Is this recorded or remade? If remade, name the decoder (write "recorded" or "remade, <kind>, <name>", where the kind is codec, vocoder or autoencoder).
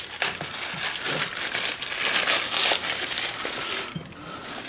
recorded